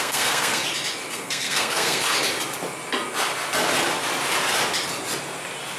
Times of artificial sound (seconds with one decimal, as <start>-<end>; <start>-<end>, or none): 0.0-0.6; 1.1-2.0